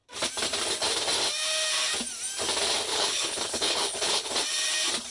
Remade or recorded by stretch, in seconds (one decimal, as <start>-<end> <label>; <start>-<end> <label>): 0.0-2.9 recorded; 2.9-4.3 remade; 4.3-5.1 recorded